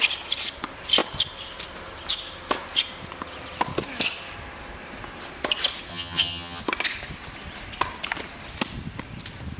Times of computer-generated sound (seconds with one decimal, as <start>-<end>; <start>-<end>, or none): 5.9-6.6